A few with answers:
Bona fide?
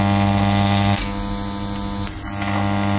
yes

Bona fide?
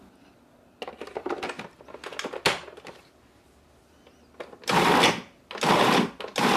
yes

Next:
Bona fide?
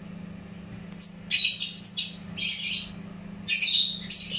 yes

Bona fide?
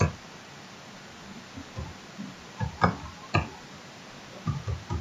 yes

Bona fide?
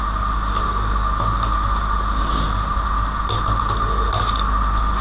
yes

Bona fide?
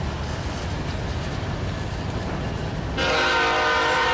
yes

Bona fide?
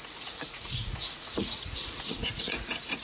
no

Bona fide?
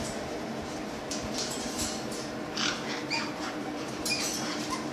no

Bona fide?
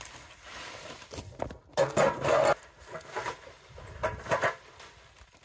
yes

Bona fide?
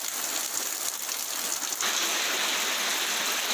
yes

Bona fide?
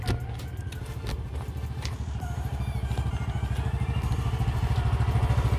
yes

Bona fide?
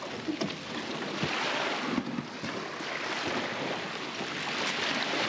yes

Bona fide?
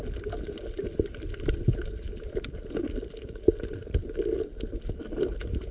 yes